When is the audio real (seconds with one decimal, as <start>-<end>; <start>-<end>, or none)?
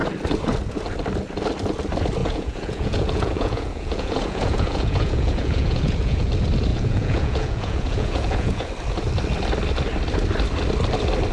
0.0-2.2; 6.3-6.7; 8.7-11.3